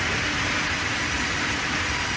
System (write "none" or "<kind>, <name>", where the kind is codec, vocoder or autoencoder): none